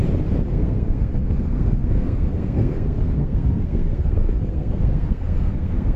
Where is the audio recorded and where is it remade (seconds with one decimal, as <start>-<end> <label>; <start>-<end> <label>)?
0.0-0.5 recorded; 0.5-6.0 remade